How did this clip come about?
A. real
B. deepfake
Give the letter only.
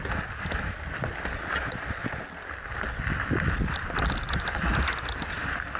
A